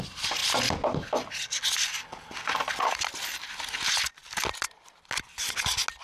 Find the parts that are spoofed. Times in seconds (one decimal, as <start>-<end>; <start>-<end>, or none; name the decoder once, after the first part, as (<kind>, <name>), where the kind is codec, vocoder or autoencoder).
none